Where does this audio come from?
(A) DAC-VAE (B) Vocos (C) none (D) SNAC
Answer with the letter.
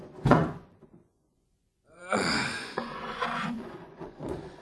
B